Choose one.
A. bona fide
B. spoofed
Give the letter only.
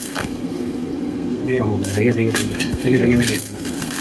B